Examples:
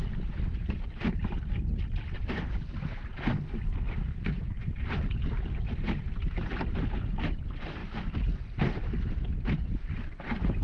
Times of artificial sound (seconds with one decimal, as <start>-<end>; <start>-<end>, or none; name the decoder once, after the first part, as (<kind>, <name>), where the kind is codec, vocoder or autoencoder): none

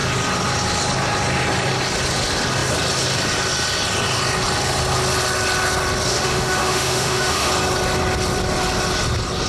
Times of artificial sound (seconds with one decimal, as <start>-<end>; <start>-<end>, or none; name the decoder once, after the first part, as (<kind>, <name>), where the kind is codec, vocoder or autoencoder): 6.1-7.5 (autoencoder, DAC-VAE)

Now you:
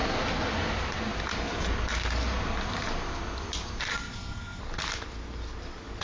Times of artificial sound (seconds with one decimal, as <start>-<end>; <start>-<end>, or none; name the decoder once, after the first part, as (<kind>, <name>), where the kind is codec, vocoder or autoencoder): 3.9-4.6 (codec, SNAC)